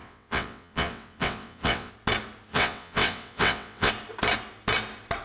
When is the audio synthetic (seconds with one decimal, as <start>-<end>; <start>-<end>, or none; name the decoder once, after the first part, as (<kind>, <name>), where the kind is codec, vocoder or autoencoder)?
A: 0.0-1.9 (vocoder, WaveNeXt); 2.5-3.9